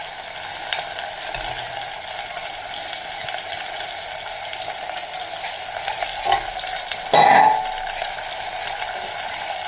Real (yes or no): yes